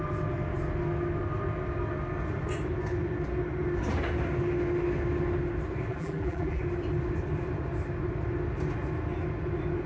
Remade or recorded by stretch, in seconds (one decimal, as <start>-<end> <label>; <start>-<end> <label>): 0.0-5.9 recorded; 5.9-6.6 remade; 6.6-9.9 recorded